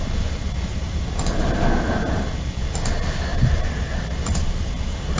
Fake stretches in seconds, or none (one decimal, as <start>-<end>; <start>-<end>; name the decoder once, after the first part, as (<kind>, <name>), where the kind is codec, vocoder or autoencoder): 0.7-1.6 (vocoder, BigVGAN v2); 3.3-5.2